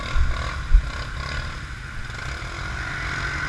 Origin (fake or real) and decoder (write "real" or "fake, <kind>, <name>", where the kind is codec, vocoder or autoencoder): real